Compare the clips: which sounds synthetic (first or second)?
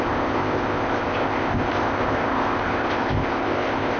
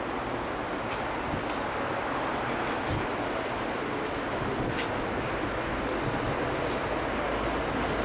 first